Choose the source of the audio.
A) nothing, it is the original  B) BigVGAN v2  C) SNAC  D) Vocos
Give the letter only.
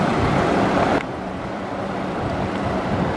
B